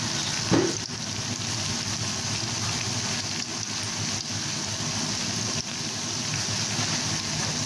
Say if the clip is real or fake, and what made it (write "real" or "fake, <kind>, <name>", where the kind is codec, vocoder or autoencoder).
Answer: real